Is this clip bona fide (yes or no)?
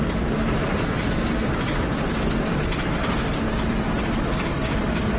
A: no